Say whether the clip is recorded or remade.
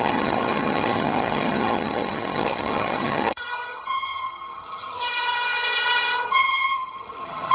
remade